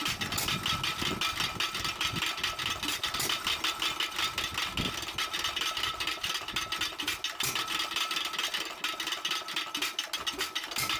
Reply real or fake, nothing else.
real